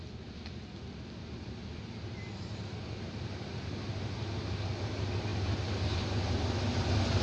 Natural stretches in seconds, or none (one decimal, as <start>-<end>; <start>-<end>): 0.0-7.2